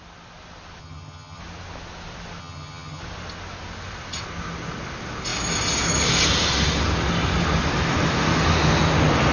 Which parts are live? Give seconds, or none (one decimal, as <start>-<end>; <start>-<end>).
0.0-0.8; 1.4-2.4; 3.0-9.3